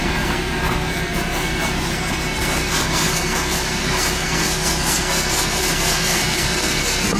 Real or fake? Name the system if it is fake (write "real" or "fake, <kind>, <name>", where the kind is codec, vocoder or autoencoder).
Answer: fake, codec, SNAC